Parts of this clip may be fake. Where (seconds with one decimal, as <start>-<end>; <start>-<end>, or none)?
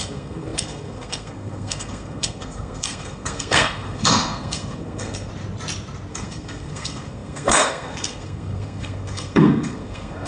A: 0.0-5.3; 6.1-10.3